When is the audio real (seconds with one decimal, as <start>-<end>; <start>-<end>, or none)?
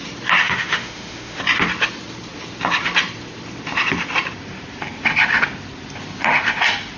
0.0-0.4; 1.4-7.0